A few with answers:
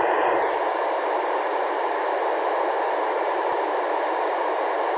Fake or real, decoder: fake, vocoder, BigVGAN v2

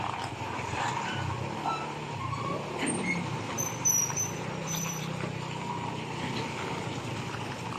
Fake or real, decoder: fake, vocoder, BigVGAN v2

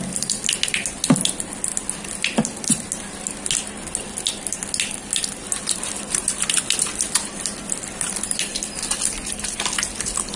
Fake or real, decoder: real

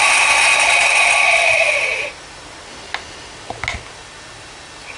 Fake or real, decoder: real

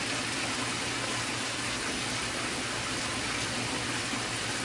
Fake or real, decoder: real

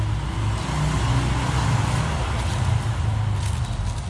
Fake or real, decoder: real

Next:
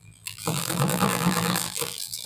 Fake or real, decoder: fake, vocoder, BigVGAN v2